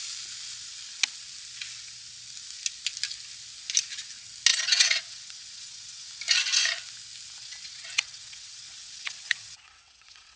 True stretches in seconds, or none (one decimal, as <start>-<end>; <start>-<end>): 0.0-4.5; 6.1-7.4